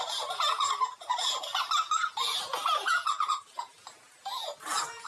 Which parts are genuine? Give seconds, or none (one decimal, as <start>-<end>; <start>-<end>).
0.0-5.1

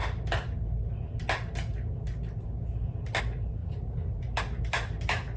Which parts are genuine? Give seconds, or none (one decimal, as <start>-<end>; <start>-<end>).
0.0-3.6; 4.4-5.4

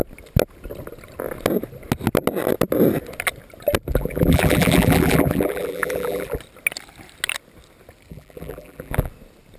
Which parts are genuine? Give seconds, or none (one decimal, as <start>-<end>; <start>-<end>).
0.0-3.9; 6.4-8.1; 9.1-9.6

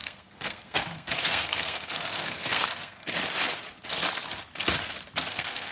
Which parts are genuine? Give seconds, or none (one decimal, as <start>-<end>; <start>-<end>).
3.0-5.3